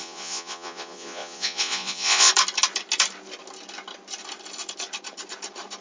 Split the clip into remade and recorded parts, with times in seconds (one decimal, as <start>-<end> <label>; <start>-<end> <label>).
0.0-2.3 remade; 2.3-5.8 recorded